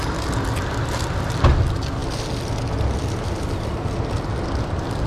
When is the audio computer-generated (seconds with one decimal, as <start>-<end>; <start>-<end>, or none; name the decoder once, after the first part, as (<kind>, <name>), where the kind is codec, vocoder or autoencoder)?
none